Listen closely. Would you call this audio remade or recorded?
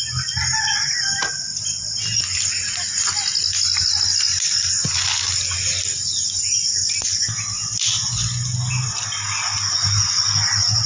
recorded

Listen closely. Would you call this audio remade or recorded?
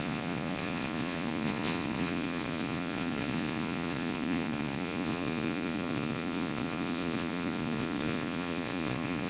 remade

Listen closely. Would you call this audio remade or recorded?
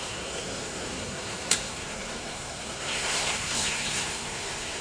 remade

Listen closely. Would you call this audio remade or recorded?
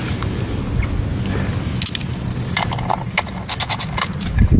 recorded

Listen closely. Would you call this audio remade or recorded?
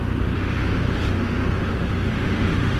remade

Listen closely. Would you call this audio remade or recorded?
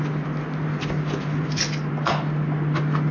recorded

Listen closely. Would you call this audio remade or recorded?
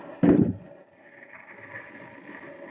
recorded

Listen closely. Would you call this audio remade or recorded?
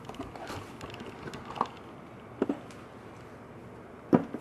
recorded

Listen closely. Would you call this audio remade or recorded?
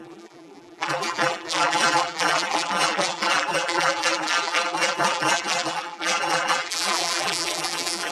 remade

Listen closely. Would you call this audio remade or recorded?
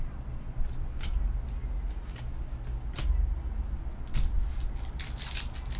recorded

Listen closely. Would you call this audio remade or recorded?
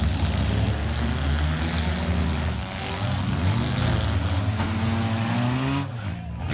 recorded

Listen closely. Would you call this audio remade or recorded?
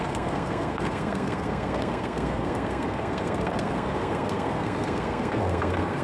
remade